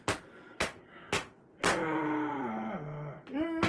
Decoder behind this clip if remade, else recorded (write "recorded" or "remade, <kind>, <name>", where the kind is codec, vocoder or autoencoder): recorded